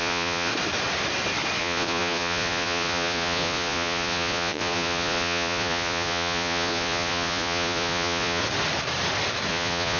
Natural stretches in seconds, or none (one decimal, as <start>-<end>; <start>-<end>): 0.5-1.6; 8.4-9.5